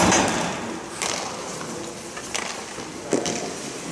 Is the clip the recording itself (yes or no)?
yes